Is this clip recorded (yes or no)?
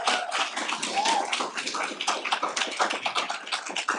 yes